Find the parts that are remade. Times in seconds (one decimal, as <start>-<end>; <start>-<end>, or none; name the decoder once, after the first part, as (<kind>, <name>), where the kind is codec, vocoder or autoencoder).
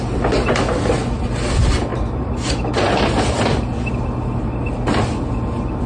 none